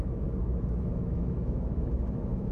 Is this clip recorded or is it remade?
remade